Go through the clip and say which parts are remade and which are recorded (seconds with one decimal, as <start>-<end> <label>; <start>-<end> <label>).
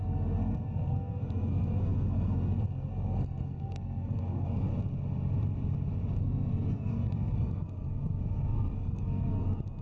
0.0-4.7 remade; 4.7-6.2 recorded; 6.2-9.8 remade